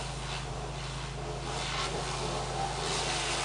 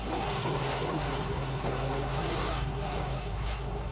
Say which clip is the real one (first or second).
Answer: first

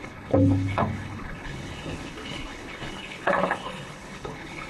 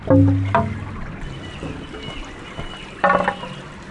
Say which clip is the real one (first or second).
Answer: second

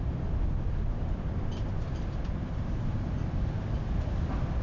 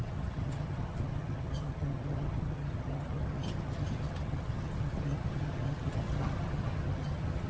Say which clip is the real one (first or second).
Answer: first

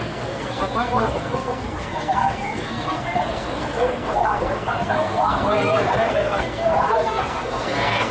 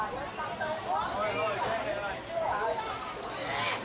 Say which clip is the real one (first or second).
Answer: second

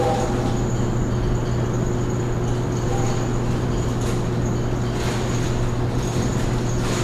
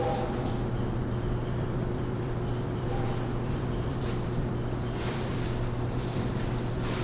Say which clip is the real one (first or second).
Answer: first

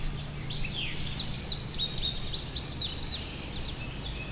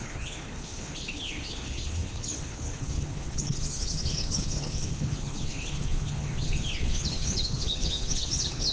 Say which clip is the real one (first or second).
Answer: first